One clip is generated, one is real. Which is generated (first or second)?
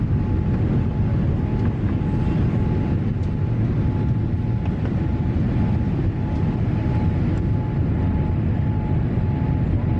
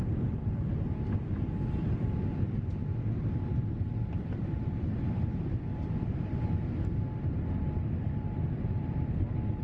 second